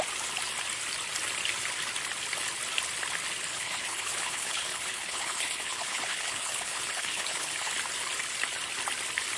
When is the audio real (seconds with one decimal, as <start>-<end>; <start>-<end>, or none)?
0.0-3.5; 7.7-9.4